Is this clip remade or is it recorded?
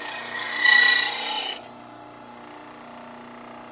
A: recorded